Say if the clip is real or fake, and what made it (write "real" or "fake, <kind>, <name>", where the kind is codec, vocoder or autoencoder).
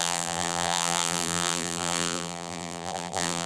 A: fake, vocoder, BigVGAN v2